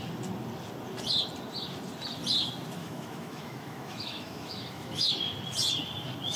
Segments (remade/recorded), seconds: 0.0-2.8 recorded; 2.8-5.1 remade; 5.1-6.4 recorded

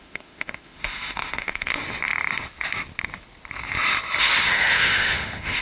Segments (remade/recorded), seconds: 0.0-1.7 remade; 1.7-4.2 recorded; 4.2-5.6 remade

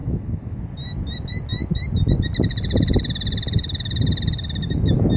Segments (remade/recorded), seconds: 0.0-0.6 remade; 0.6-5.2 recorded

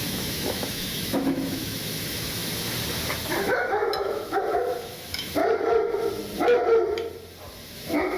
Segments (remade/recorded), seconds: 0.0-2.4 remade; 2.4-3.3 recorded; 3.3-5.4 remade; 5.4-7.7 recorded; 7.7-8.2 remade

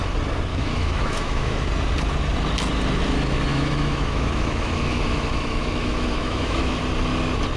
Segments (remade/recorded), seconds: 0.0-0.5 recorded; 0.5-1.7 remade; 1.7-3.5 recorded; 3.5-6.8 remade; 6.8-7.6 recorded

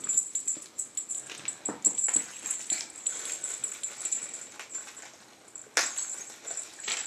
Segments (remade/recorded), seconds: 0.0-7.1 recorded

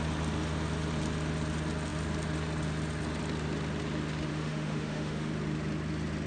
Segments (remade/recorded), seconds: 0.0-4.3 recorded; 4.3-5.3 remade; 5.3-6.3 recorded